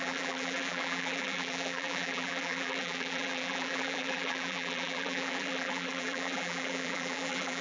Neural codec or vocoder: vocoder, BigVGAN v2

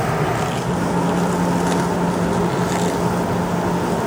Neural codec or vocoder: none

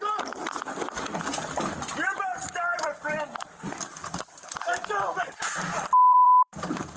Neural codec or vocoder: vocoder, BigVGAN v2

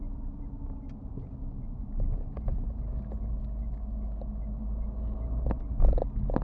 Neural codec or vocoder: none